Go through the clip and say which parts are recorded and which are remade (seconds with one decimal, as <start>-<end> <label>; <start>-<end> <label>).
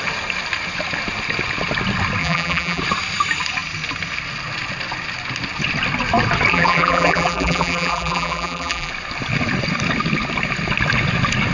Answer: 0.0-2.2 recorded; 2.2-2.8 remade; 2.8-6.5 recorded; 6.5-8.9 remade; 8.9-11.5 recorded